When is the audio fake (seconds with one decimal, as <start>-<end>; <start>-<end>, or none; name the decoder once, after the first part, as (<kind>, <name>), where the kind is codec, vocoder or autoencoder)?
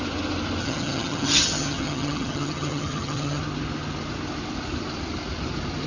0.6-3.4 (vocoder, HiFi-GAN)